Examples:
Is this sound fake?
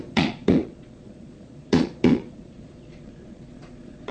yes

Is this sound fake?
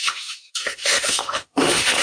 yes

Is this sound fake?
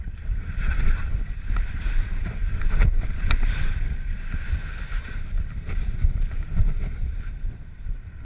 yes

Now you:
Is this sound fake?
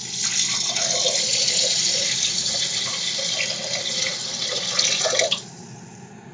no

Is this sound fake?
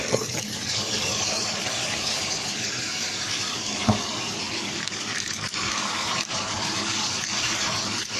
yes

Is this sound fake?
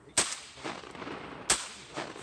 no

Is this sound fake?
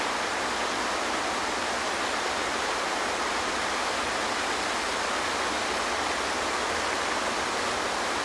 no